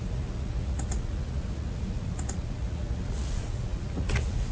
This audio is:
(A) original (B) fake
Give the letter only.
B